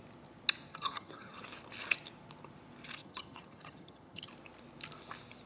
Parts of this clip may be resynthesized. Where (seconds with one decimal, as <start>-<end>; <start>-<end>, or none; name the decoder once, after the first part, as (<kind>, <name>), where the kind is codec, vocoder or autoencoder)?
0.7-1.4 (vocoder, HiFi-GAN); 3.0-4.3